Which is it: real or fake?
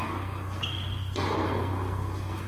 fake